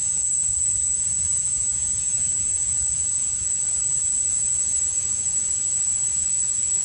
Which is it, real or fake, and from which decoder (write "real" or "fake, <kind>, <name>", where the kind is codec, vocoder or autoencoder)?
fake, vocoder, Vocos